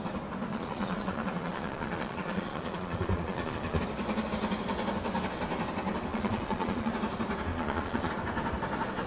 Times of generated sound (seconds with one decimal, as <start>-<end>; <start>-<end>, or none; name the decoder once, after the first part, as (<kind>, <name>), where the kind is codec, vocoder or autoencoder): 0.5-3.8 (vocoder, Vocos); 6.1-6.9; 7.5-8.1